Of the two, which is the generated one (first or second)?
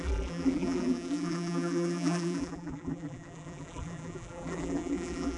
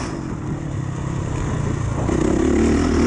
first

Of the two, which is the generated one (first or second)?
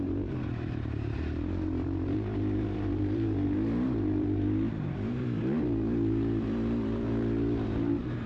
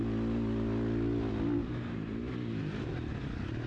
first